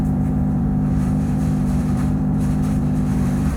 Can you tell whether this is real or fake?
fake